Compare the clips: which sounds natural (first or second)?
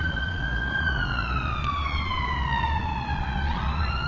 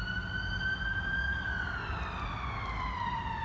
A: second